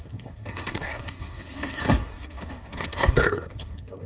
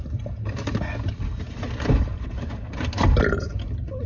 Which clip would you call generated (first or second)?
first